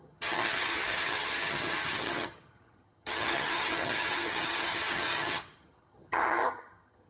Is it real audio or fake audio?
fake